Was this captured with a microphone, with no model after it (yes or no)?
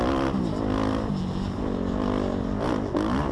yes